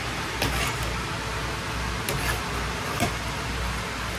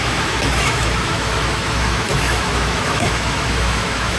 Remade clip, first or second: second